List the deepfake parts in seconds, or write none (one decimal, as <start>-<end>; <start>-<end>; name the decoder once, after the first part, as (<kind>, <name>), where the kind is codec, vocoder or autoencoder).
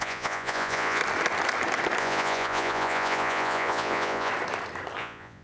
0.0-1.0 (vocoder, Vocos); 2.0-4.3; 5.0-5.4